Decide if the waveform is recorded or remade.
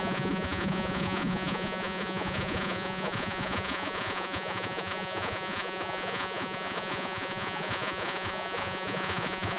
remade